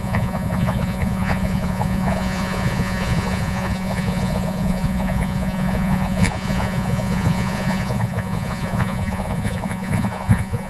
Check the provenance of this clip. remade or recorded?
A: remade